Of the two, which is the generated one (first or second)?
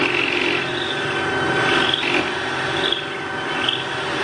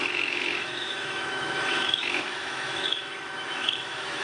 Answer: second